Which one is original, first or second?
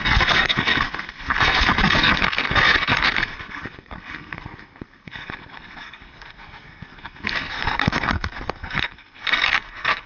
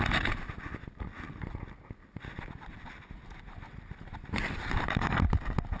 second